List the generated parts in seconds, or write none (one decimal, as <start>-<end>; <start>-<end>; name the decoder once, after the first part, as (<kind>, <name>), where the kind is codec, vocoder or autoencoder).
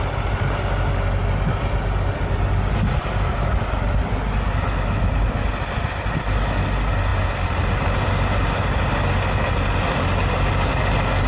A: none